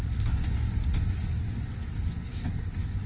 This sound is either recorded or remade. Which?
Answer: recorded